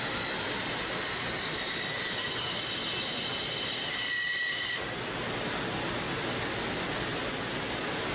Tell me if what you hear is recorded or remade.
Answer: recorded